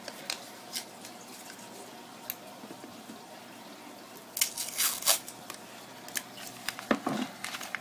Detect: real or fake real